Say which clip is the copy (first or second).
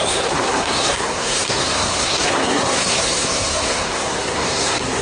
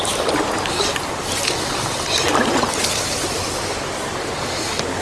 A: first